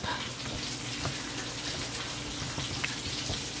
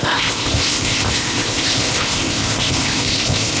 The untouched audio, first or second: first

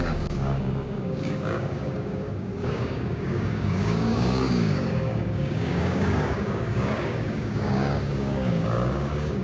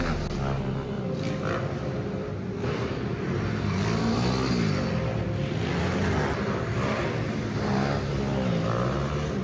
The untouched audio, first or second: second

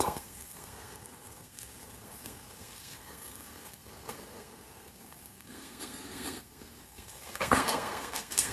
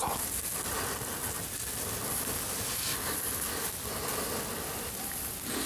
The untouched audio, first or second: second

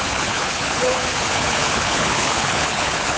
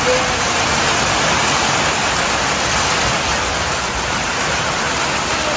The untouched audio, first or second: second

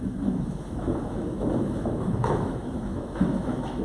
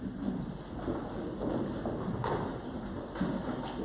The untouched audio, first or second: second